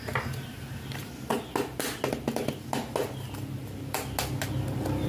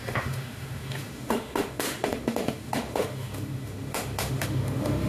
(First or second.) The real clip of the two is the first